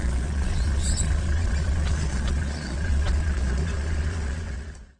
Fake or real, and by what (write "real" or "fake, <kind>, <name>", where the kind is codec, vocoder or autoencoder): fake, vocoder, Vocos